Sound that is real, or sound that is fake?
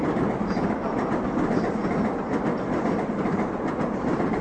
real